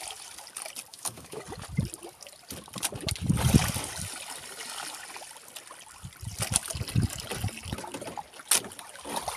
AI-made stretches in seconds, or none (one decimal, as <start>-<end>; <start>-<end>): 0.9-1.4